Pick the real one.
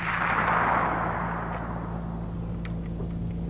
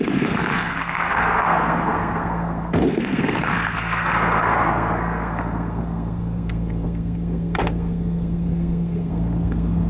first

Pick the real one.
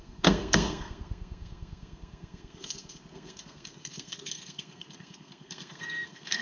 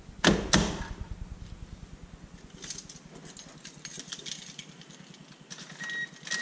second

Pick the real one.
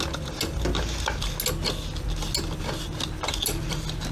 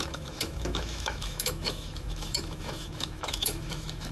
first